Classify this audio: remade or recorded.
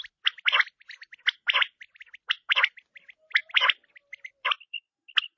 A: recorded